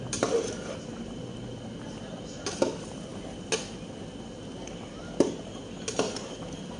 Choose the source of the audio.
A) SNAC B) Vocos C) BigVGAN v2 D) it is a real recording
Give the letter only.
D